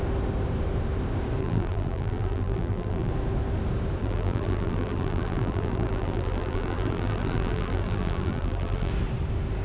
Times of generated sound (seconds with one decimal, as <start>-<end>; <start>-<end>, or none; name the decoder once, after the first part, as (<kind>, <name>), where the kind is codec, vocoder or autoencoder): 1.4-3.1 (vocoder, BigVGAN v2); 4.0-8.9